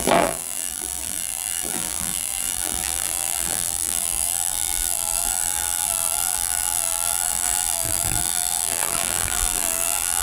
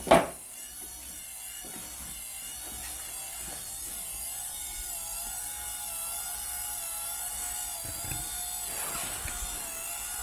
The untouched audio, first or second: second